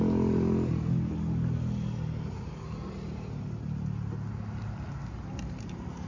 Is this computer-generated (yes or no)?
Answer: no